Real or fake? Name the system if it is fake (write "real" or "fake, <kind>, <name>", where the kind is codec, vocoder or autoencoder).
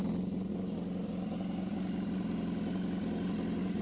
real